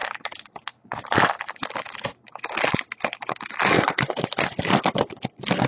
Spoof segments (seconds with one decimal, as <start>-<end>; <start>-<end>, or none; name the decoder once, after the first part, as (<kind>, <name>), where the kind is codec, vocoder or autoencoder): none